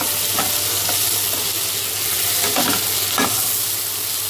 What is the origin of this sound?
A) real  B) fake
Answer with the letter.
A